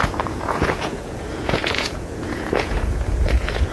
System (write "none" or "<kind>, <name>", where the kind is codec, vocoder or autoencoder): vocoder, Vocos